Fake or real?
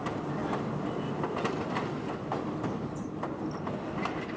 real